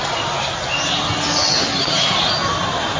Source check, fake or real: real